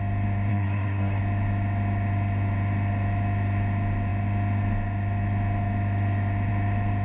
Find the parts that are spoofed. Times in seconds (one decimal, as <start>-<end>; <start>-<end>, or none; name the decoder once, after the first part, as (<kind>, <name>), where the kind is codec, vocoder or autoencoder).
0.5-1.2 (codec, SNAC)